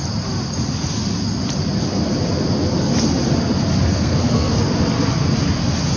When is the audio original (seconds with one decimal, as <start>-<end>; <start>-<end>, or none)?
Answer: 0.0-3.9; 4.6-6.0